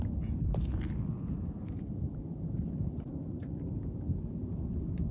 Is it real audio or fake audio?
real